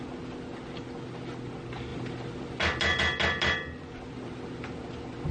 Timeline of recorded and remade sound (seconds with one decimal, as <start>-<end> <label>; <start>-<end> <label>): 0.0-5.3 recorded